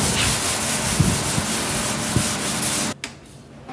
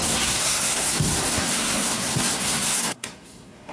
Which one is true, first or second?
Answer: first